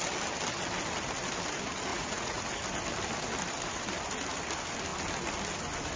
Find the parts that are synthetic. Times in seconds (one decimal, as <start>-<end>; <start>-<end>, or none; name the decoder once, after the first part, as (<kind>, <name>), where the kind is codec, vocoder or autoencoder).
1.9-2.4 (vocoder, Vocos)